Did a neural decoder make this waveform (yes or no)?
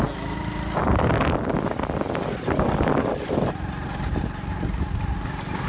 no